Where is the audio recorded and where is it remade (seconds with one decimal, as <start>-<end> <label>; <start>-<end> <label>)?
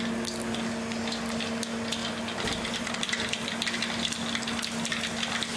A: 0.0-5.6 recorded